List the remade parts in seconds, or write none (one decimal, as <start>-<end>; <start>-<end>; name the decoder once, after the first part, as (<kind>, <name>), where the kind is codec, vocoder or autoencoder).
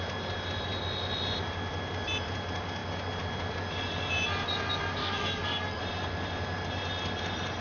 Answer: 5.0-5.8 (codec, SNAC)